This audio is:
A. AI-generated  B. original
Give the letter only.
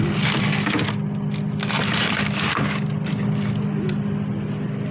B